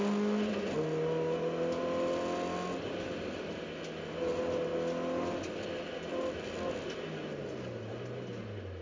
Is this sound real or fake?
real